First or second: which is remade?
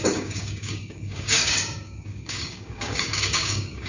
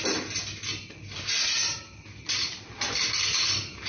first